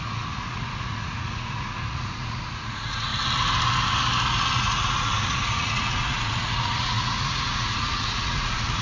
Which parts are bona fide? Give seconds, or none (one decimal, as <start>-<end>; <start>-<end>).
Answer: 3.1-4.6